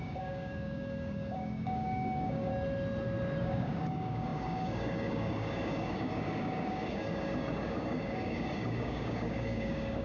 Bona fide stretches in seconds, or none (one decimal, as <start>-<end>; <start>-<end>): 2.5-3.4